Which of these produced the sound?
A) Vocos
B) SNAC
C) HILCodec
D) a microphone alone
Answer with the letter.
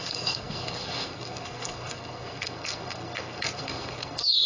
B